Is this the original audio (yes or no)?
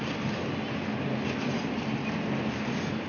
yes